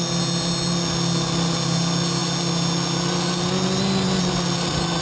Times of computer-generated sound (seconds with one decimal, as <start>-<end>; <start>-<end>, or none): none